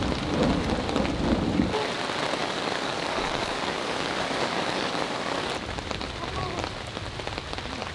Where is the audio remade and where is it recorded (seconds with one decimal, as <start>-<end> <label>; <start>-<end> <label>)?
0.0-2.4 recorded; 2.4-5.5 remade; 5.5-7.9 recorded